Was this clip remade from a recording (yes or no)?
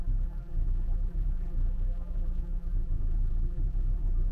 yes